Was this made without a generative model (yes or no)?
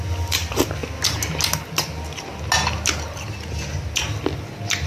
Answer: yes